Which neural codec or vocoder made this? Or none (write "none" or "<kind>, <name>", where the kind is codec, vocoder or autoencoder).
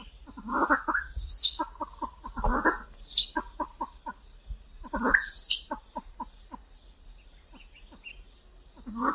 none